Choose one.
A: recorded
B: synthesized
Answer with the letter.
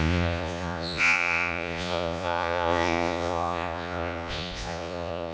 B